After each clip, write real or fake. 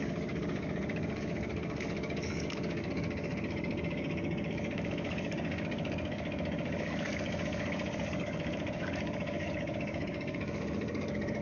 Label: fake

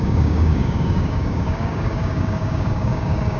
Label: fake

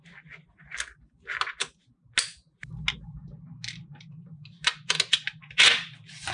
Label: real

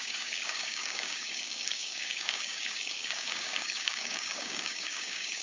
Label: fake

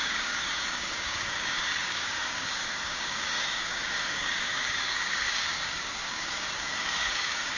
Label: fake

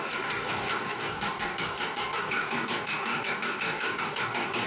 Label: fake